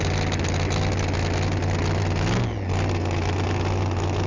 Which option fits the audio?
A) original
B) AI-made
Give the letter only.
A